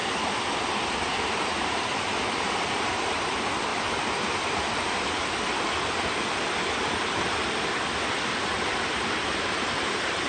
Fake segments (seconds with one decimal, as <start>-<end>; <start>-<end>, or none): 2.3-3.7; 8.7-10.3